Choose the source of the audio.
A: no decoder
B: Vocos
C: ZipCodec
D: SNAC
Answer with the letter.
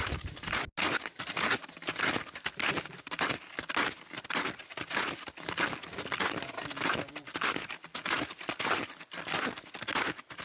A